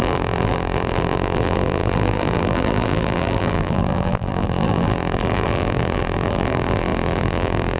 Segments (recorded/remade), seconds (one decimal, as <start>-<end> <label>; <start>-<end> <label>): 0.0-7.8 remade